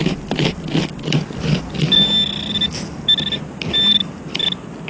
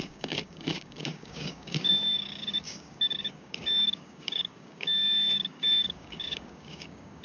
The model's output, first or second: second